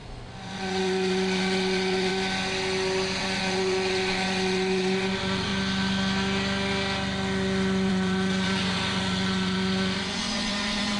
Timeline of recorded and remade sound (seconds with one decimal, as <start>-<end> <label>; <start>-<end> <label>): 0.0-2.1 remade; 2.1-3.2 recorded; 3.2-5.5 remade; 5.5-7.9 recorded; 7.9-11.0 remade

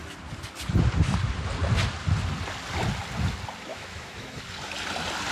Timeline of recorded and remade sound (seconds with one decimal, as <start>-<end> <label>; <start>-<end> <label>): 0.0-3.7 recorded; 3.7-4.4 remade; 4.4-5.3 recorded

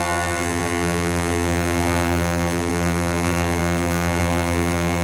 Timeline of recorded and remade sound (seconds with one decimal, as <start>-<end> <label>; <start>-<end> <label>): 0.0-5.0 remade

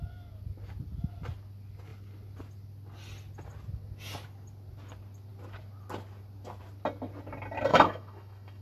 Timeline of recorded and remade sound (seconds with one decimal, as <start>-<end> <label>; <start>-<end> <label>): 0.0-7.7 recorded; 7.7-8.6 remade